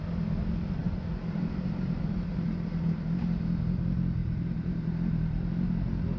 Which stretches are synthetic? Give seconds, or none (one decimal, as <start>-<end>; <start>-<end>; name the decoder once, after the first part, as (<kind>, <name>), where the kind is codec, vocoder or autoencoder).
0.8-2.3 (vocoder, BigVGAN v2); 4.2-4.9